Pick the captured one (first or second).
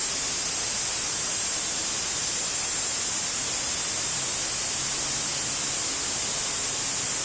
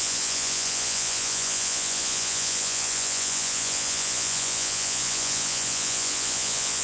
first